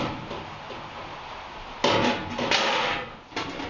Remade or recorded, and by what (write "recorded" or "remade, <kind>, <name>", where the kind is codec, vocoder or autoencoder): recorded